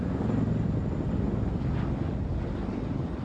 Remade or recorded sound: recorded